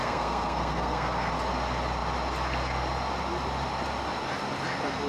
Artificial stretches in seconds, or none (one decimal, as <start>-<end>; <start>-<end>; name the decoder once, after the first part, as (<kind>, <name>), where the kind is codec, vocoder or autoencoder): 0.0-1.3 (codec, SNAC)